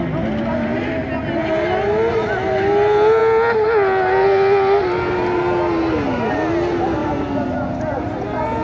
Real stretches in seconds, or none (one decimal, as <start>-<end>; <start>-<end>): 0.0-8.6